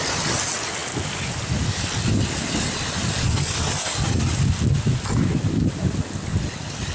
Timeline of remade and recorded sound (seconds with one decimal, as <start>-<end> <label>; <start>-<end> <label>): 0.0-6.9 recorded